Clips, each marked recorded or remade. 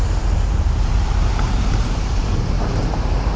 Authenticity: remade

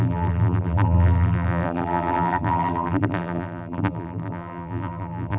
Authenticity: remade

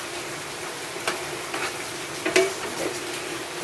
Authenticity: remade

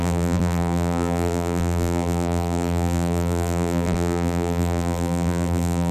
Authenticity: remade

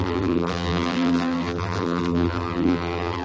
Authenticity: remade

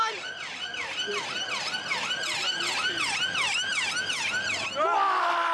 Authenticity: recorded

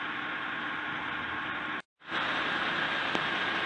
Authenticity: recorded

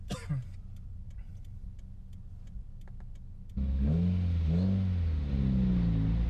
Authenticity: recorded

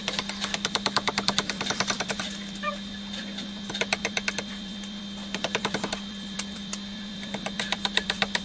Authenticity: remade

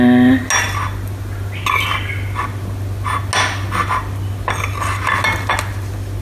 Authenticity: recorded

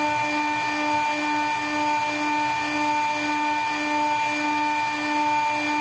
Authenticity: recorded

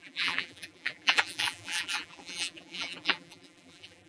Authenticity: remade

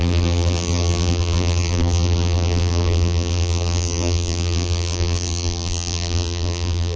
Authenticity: remade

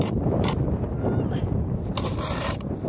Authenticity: remade